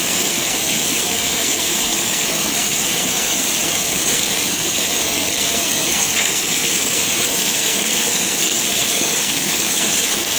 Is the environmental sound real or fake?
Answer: fake